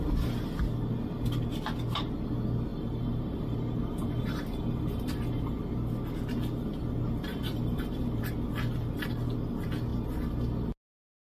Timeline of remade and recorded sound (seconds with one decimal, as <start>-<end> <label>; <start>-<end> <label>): 0.0-2.7 recorded; 2.7-5.6 remade; 5.6-7.3 recorded; 7.3-8.2 remade; 8.2-11.2 recorded